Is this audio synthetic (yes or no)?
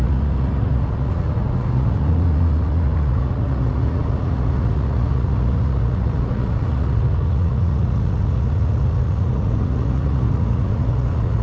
yes